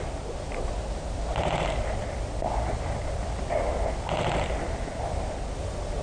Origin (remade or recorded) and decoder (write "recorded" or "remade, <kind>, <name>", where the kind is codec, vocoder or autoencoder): recorded